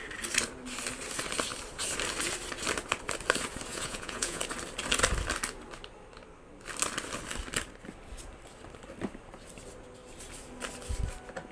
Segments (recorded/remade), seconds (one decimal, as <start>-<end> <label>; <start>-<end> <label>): 0.0-3.7 recorded; 3.7-4.4 remade; 4.4-11.5 recorded